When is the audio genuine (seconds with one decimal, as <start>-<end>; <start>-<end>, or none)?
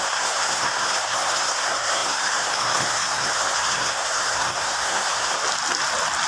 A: 5.4-6.3